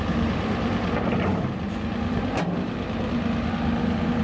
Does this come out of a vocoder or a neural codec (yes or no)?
yes